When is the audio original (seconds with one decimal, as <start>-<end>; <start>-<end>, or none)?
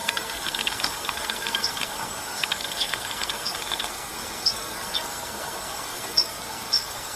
none